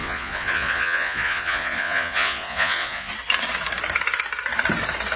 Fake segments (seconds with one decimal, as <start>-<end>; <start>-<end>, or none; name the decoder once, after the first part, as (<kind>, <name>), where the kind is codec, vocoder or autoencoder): 0.0-3.1 (vocoder, Vocos)